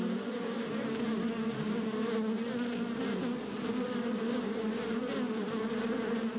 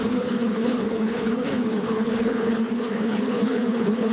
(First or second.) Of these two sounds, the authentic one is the first